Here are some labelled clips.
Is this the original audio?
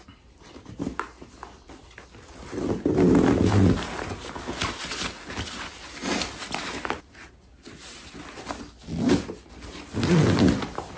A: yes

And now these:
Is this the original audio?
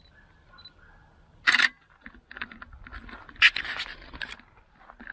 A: yes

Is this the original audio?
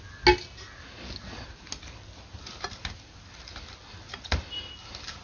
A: yes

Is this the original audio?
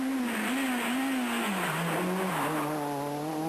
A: yes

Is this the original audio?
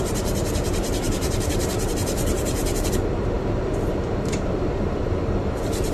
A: no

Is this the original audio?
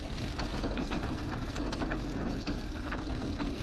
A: no